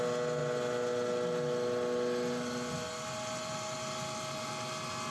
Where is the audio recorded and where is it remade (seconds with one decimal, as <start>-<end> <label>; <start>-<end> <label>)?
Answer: 0.0-5.1 recorded